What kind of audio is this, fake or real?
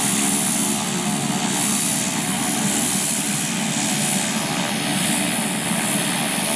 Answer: real